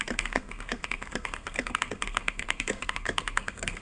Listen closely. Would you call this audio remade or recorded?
remade